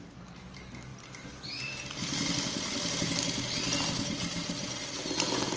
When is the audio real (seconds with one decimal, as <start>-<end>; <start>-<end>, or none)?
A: 0.0-5.6